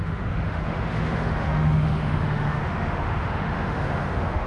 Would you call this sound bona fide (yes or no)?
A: no